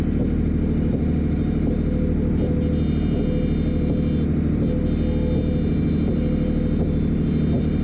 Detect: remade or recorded recorded